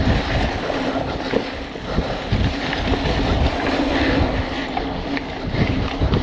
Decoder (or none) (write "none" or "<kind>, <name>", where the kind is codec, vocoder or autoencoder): none